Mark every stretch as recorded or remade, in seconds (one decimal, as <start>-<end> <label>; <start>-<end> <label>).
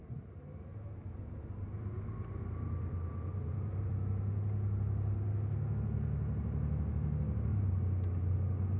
0.0-3.9 remade; 3.9-8.8 recorded